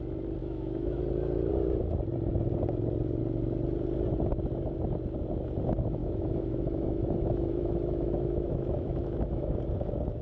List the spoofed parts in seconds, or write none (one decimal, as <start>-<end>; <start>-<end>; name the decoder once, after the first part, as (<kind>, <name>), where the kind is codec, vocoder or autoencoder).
0.4-1.0 (autoencoder, DAC-VAE); 6.0-9.6